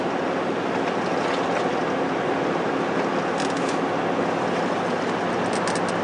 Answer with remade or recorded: recorded